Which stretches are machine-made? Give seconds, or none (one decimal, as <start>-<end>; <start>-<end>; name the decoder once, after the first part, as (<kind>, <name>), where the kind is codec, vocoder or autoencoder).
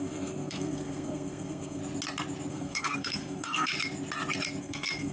0.0-1.8 (codec, SNAC); 2.5-3.7; 4.6-5.1